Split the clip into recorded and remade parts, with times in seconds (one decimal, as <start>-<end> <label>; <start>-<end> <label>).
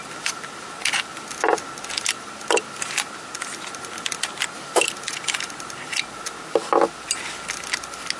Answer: 0.0-8.2 recorded